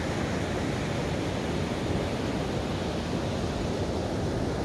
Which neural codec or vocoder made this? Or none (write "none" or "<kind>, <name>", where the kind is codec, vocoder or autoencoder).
none